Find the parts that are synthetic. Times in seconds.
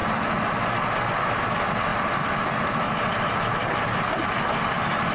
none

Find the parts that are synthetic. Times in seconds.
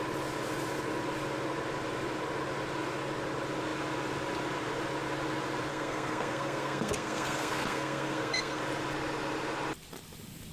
5.7-8.6 (codec, SNAC)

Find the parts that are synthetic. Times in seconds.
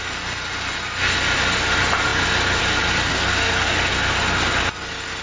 3.1-3.7 (codec, SNAC)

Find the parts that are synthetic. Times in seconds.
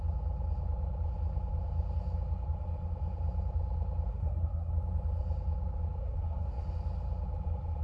4.1-4.7 (codec, SNAC); 6.0-6.6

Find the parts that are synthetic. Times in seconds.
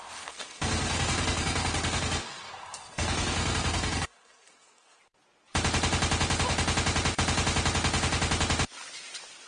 0.0-5.0 (codec, SNAC)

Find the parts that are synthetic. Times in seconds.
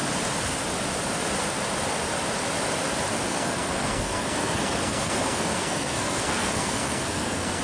3.3-7.6 (codec, SNAC)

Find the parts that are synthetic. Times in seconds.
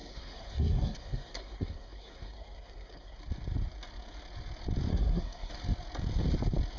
0.0-3.2 (codec, SNAC); 4.9-5.5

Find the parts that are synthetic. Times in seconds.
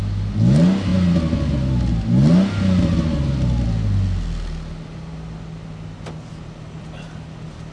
none